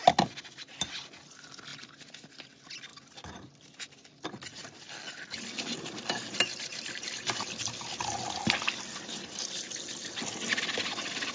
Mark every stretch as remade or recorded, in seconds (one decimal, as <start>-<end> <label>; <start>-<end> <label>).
0.0-11.3 recorded